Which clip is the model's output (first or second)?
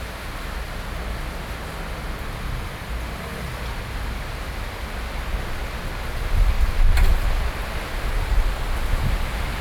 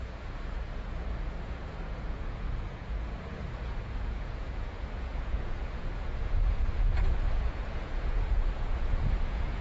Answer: second